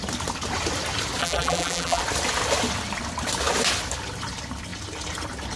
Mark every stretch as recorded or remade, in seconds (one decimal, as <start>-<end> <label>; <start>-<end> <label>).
0.0-1.2 recorded; 1.2-2.0 remade; 2.0-5.6 recorded